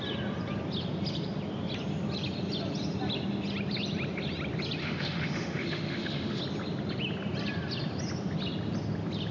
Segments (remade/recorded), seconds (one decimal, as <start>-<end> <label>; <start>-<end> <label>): 0.0-4.8 recorded; 4.8-6.4 remade; 6.4-9.3 recorded